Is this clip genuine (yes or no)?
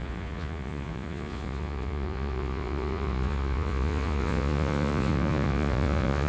no